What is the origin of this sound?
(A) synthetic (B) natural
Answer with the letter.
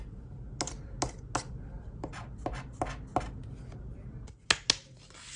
B